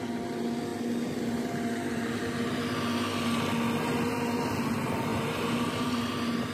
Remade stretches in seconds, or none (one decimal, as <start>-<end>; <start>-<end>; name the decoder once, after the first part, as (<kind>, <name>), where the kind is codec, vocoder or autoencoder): 5.1-6.1 (vocoder, BigVGAN v2)